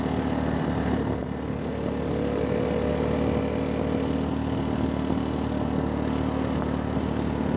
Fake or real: real